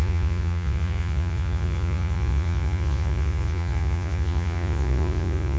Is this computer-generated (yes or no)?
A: yes